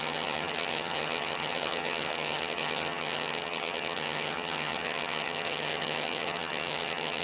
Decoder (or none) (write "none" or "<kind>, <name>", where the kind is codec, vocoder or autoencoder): vocoder, HiFi-GAN